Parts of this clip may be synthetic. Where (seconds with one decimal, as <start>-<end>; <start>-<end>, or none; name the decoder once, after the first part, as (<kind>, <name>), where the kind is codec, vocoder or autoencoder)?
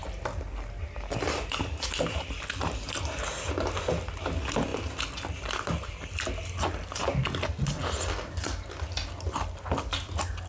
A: none